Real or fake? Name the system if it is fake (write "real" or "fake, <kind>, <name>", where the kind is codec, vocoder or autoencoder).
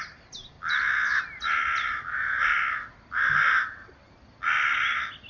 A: real